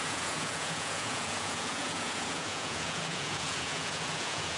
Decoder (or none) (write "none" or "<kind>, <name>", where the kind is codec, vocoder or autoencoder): vocoder, Vocos